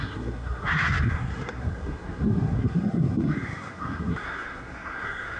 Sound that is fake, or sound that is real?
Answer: fake